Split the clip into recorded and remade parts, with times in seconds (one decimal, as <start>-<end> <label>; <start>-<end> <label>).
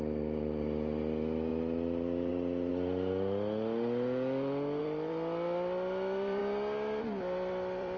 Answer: 0.0-1.5 remade; 1.5-2.3 recorded; 2.3-2.7 remade; 2.7-4.8 recorded; 4.8-6.4 remade; 6.4-7.0 recorded; 7.0-8.0 remade